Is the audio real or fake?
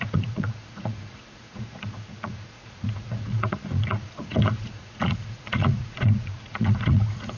fake